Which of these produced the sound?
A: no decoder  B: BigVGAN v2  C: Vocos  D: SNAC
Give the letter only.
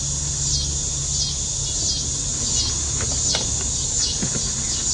A